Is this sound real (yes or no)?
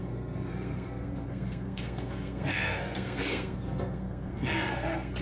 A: no